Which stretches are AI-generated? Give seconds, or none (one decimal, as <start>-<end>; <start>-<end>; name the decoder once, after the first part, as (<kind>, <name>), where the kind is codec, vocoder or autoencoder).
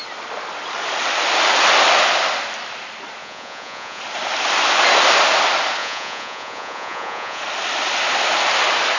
3.2-4.0 (vocoder, Vocos); 5.8-7.4